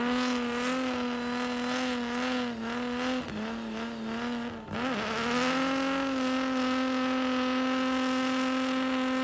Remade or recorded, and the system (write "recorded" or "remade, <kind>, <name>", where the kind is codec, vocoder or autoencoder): recorded